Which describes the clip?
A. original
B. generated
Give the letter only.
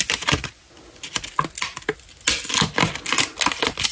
A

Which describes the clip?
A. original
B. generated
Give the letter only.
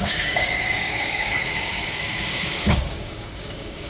B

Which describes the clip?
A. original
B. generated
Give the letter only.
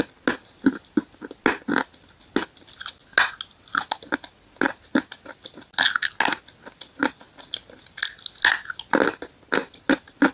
A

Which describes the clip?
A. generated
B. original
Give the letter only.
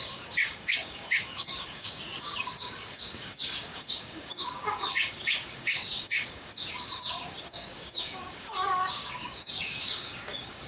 A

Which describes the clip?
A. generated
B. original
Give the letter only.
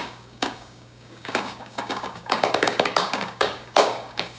A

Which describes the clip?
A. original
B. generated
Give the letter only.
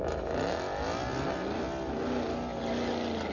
A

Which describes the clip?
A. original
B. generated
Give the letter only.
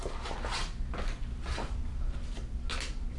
A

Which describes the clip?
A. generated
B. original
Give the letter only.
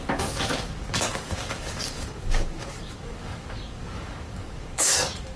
A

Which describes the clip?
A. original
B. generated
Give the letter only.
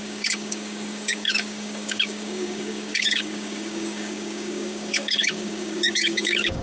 B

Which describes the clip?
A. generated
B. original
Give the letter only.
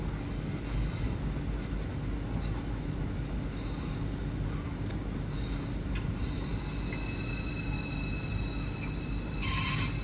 B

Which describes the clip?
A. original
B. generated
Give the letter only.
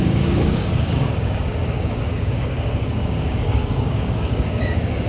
B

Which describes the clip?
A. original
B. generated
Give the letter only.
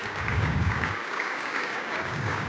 B